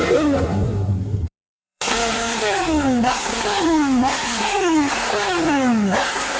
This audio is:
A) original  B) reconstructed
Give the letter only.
B